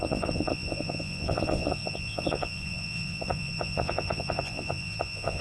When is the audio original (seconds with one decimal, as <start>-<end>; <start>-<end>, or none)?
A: none